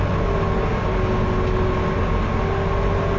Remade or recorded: recorded